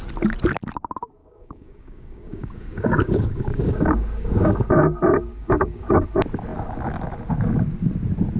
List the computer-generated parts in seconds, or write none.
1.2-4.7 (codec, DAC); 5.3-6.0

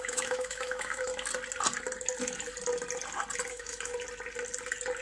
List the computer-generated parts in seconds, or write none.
0.0-1.1 (autoencoder, DAC-VAE); 3.5-3.9

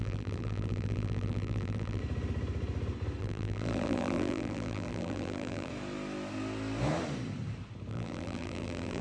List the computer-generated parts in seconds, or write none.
0.0-2.0 (vocoder, BigVGAN v2); 3.2-5.7; 7.9-9.0

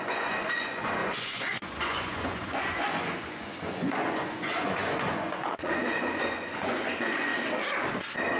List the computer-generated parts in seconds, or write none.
0.0-7.3 (vocoder, Vocos)

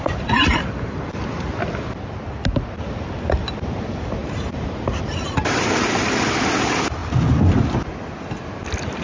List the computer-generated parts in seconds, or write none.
0.0-1.4 (vocoder, BigVGAN v2); 4.2-5.6